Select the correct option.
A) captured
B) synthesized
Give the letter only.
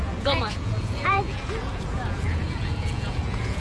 B